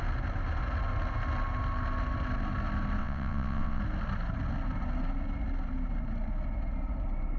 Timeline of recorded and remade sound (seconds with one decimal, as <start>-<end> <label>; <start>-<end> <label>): 0.0-3.0 recorded; 3.0-3.8 remade; 3.8-7.4 recorded